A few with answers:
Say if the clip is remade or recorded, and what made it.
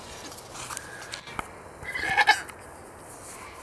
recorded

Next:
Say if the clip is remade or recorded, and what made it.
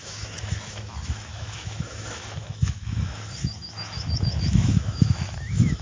remade, autoencoder, DAC-VAE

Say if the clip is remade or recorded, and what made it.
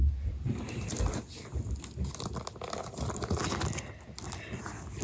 recorded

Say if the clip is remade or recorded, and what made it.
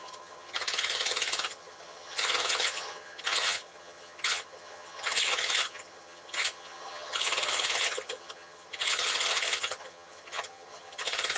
remade, vocoder, HiFi-GAN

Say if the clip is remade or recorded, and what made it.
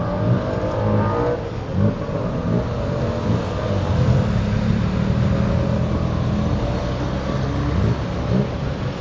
recorded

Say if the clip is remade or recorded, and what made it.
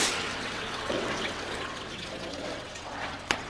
remade, vocoder, WaveNeXt